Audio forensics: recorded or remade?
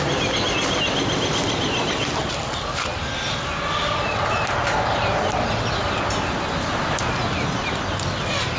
recorded